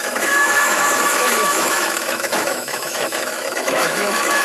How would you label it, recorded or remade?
remade